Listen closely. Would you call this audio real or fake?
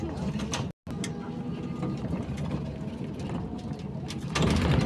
real